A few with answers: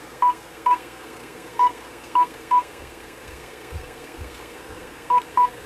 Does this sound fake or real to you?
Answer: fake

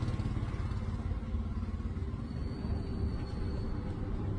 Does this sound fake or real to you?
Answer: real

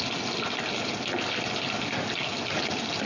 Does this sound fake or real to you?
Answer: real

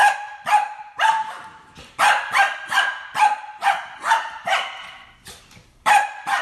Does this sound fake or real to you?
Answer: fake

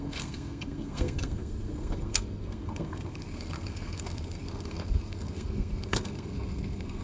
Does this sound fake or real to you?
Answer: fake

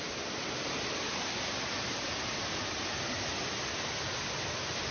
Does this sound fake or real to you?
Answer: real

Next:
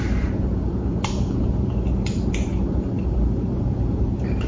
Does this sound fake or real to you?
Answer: fake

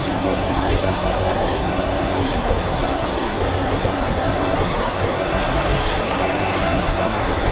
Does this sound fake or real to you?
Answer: fake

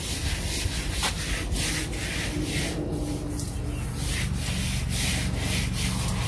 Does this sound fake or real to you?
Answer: real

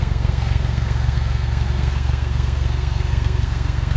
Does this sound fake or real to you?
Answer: fake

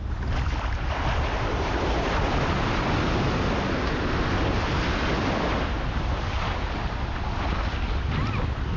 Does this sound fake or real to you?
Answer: real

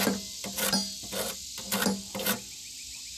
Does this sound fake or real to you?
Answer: real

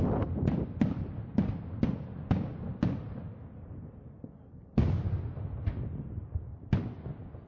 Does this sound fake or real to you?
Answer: real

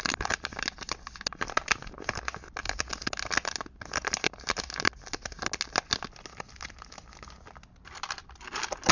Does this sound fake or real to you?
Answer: real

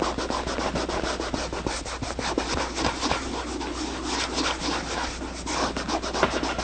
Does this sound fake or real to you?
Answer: real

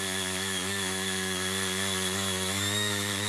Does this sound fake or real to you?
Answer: fake